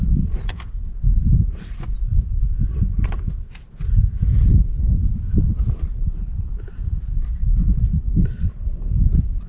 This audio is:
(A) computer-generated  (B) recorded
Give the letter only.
B